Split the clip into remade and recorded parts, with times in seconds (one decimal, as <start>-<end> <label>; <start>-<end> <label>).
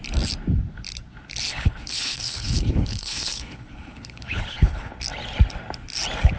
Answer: 0.0-1.5 recorded; 1.5-4.9 remade; 4.9-6.4 recorded